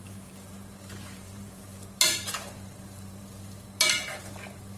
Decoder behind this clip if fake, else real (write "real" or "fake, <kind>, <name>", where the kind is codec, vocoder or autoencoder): fake, vocoder, BigVGAN v2